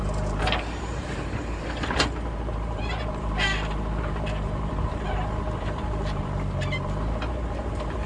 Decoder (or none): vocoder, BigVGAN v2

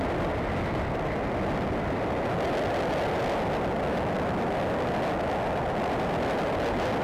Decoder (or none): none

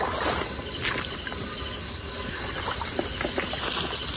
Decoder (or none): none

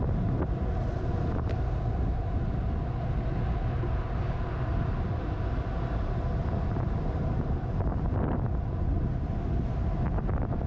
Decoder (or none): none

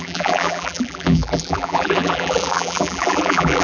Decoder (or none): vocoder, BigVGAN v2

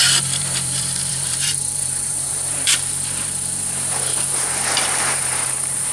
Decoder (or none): vocoder, BigVGAN v2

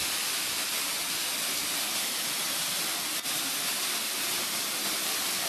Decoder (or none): none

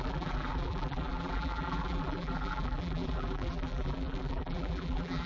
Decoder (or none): vocoder, BigVGAN v2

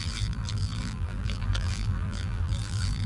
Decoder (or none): vocoder, BigVGAN v2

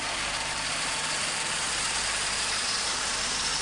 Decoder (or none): vocoder, BigVGAN v2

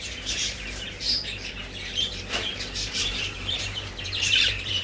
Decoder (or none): vocoder, BigVGAN v2